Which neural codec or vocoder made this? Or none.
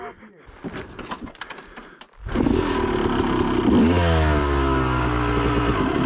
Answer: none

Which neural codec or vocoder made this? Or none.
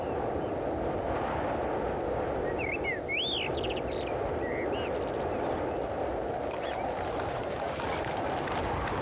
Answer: none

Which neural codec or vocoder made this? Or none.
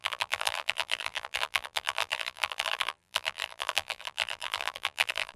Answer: vocoder, BigVGAN v2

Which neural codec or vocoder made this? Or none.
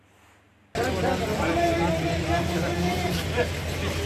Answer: none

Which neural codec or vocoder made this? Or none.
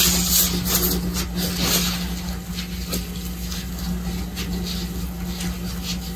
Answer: none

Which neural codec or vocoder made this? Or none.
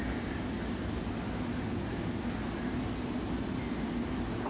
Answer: none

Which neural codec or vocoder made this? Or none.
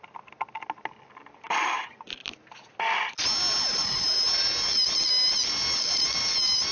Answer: none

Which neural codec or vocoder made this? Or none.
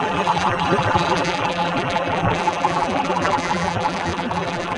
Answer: vocoder, BigVGAN v2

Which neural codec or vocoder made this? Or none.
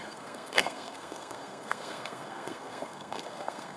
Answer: codec, SNAC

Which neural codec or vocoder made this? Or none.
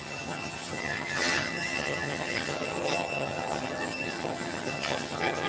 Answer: vocoder, HiFi-GAN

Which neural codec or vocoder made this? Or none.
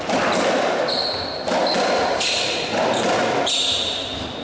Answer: none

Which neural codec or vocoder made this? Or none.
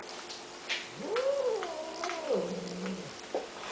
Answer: none